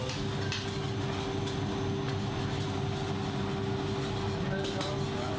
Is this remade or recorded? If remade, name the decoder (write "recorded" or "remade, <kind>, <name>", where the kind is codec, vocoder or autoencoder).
recorded